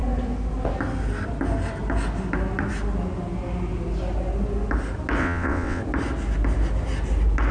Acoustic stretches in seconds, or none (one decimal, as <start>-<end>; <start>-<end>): 0.0-5.2; 5.8-7.5